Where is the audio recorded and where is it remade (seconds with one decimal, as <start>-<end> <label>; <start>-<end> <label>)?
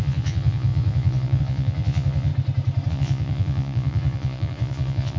0.0-2.3 remade; 2.3-2.9 recorded; 2.9-5.2 remade